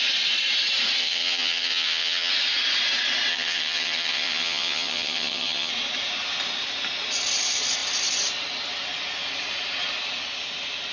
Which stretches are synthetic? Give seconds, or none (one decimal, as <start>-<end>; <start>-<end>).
1.0-2.3; 3.3-5.7